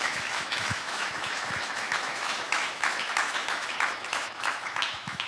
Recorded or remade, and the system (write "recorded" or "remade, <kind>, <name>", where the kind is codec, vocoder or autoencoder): remade, autoencoder, DAC-VAE